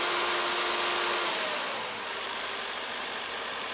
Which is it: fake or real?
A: real